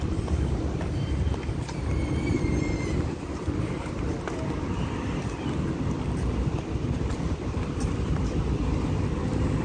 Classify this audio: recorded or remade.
recorded